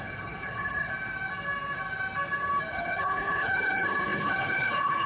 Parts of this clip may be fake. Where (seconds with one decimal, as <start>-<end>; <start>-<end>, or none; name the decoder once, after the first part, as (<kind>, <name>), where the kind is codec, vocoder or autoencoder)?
0.0-0.9 (codec, HILCodec); 2.7-5.1